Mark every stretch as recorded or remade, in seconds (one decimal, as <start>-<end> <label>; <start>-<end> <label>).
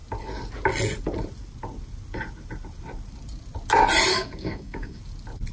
0.0-4.1 recorded; 4.1-5.0 remade; 5.0-5.5 recorded